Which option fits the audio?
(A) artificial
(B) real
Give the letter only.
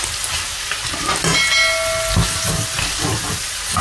B